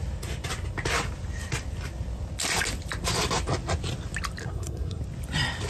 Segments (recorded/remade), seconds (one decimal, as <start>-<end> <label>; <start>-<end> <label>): 0.0-4.4 recorded; 4.4-5.0 remade; 5.0-5.7 recorded